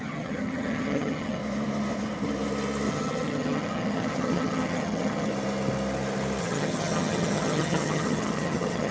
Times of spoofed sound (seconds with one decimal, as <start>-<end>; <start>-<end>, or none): 0.0-1.4; 2.9-5.3; 6.4-8.9